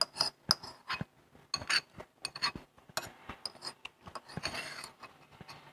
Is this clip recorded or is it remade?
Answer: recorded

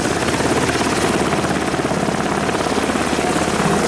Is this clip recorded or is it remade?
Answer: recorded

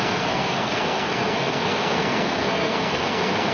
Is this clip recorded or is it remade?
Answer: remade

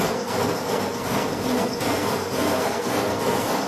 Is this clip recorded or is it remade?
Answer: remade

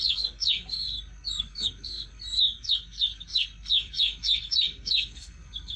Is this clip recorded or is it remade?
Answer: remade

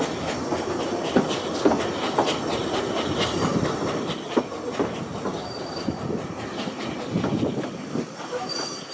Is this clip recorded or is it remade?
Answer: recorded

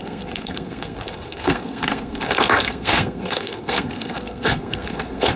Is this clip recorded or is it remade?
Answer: remade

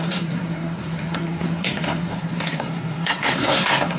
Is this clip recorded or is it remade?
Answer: remade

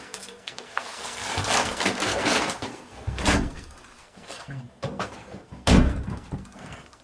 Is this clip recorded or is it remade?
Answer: remade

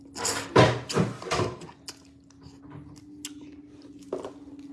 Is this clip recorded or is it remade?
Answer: recorded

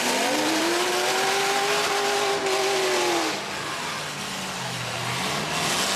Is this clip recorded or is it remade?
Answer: recorded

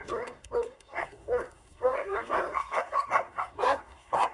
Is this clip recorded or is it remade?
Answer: remade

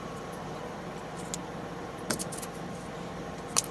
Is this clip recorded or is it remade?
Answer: recorded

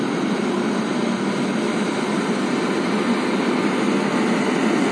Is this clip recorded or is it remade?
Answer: recorded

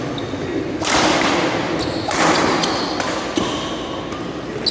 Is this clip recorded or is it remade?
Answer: recorded